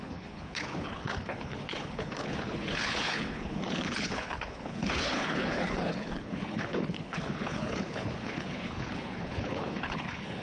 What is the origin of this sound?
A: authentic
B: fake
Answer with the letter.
B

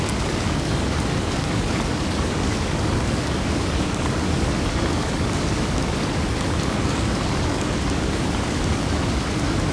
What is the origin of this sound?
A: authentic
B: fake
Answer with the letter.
B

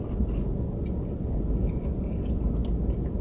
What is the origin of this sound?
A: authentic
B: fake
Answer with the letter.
A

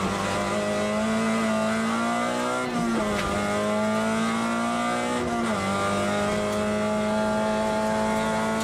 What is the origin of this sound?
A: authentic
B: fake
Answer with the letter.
A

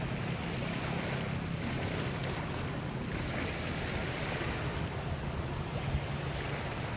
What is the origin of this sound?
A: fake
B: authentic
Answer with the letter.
B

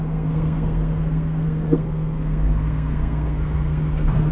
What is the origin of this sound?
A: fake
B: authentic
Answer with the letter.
A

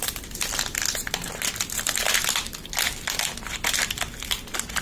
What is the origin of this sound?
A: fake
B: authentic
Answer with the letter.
B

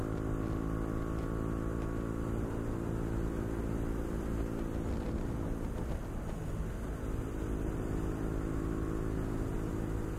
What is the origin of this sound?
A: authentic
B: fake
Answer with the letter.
A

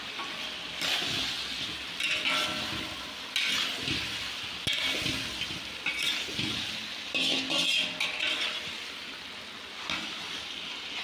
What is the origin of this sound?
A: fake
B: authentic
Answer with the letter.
B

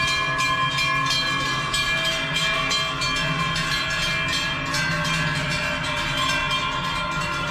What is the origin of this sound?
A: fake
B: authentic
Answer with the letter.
B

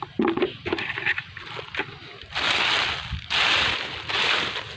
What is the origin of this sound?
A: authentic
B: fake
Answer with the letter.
A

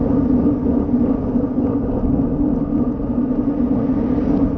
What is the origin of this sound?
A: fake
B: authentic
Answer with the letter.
B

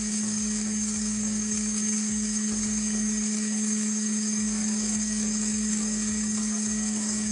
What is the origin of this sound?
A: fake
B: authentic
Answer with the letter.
A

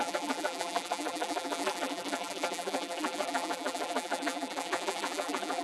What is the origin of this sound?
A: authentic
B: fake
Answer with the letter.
B